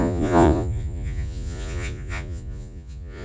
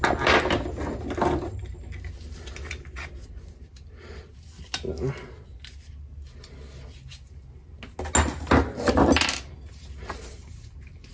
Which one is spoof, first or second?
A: first